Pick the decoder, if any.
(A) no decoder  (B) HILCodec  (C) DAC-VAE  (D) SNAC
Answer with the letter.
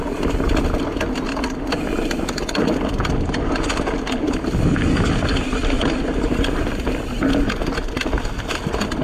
A